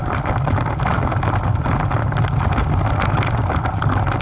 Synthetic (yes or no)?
no